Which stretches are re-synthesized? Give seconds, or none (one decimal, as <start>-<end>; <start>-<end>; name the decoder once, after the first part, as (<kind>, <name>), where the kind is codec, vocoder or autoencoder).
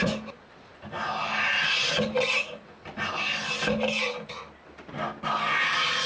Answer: none